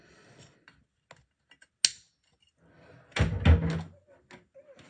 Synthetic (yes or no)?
no